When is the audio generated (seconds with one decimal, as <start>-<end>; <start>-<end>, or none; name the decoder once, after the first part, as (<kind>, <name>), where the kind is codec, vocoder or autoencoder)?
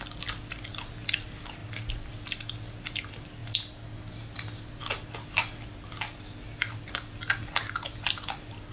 none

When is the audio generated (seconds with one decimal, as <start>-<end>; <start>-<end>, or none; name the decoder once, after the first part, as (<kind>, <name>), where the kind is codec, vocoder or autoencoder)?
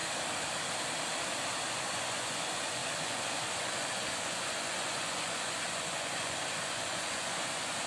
1.7-7.9 (vocoder, Vocos)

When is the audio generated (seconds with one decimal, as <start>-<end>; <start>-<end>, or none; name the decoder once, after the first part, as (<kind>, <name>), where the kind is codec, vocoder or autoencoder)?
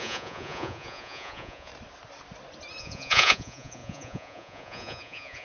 0.0-1.7 (vocoder, Vocos); 2.8-5.4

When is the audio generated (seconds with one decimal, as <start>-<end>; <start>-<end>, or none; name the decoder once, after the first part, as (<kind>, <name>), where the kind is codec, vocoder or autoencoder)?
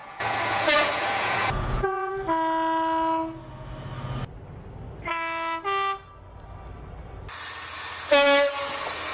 0.0-2.1 (vocoder, Vocos)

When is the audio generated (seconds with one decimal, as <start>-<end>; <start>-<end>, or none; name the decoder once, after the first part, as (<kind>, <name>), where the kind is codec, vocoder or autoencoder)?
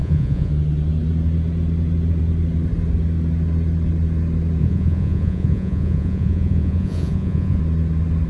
0.0-0.5 (vocoder, Vocos); 4.6-7.6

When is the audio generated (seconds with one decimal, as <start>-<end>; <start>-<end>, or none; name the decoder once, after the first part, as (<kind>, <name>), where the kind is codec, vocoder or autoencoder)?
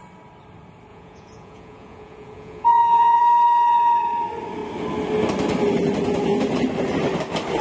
0.9-3.2 (vocoder, Vocos)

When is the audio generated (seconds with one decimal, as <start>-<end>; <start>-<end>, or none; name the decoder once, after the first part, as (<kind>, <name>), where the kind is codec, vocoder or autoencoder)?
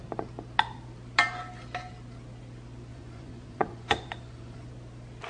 2.9-4.7 (vocoder, Vocos)